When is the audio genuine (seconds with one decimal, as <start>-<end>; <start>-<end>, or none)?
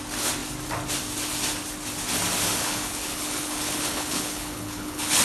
0.0-2.6